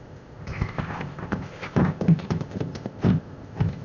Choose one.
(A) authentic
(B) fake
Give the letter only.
B